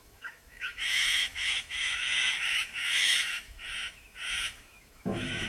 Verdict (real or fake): fake